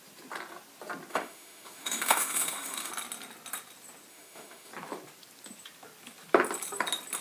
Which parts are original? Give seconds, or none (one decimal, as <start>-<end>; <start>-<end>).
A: 0.0-1.1; 2.9-4.1; 4.7-7.2